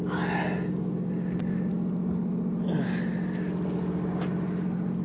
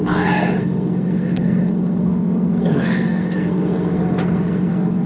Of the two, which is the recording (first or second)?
first